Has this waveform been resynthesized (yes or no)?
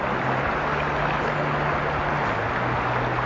no